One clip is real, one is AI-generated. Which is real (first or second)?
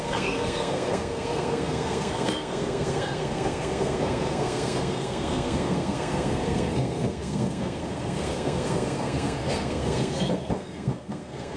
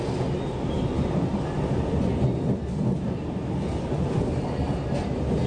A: second